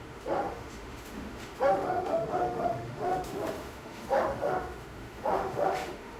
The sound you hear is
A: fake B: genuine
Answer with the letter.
A